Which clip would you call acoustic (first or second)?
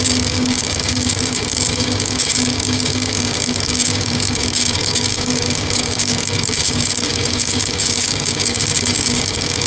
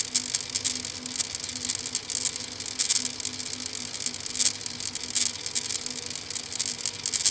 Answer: second